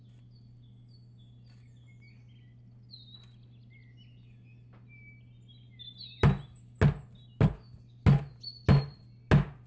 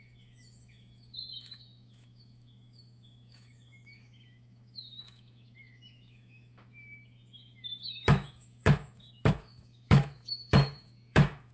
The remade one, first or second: second